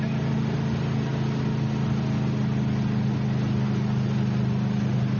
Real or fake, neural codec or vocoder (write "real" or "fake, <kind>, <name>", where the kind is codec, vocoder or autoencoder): real